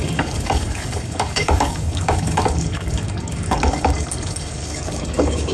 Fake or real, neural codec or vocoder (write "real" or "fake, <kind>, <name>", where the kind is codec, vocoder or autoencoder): fake, codec, DAC